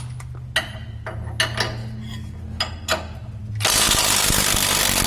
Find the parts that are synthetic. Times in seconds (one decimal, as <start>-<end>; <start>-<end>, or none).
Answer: none